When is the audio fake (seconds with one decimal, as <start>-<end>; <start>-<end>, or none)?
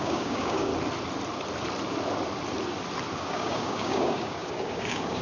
0.0-0.7; 3.2-5.2